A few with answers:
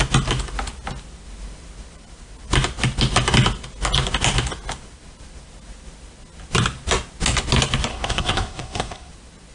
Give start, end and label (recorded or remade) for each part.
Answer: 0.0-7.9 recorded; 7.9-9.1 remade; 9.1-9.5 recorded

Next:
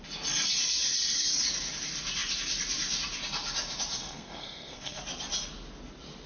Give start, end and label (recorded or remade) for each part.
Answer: 0.0-4.0 recorded; 4.0-5.0 remade; 5.0-6.3 recorded

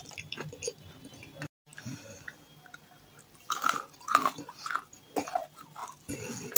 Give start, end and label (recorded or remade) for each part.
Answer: 0.0-6.6 recorded

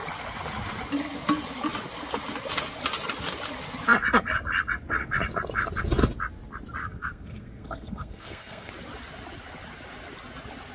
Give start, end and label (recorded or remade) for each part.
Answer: 0.0-6.8 recorded; 6.8-8.7 remade; 8.7-10.7 recorded

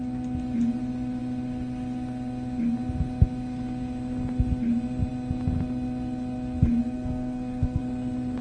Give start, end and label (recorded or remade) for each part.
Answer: 0.0-6.8 recorded; 6.8-7.8 remade; 7.8-8.4 recorded